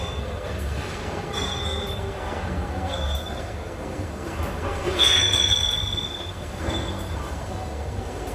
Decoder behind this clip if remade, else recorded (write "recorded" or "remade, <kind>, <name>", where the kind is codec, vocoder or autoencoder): remade, codec, SNAC